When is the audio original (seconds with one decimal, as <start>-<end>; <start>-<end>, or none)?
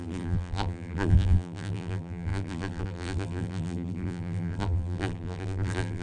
none